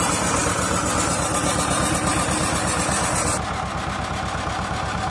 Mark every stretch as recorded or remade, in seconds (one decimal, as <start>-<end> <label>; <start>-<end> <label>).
0.0-5.1 recorded